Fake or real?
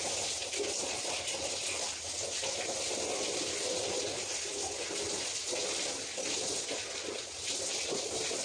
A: real